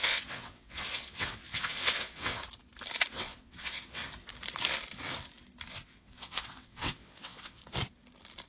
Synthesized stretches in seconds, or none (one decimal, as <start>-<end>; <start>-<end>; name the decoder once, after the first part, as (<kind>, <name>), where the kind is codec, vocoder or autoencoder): 0.0-2.4 (vocoder, WaveNeXt); 3.1-4.0; 5.7-7.6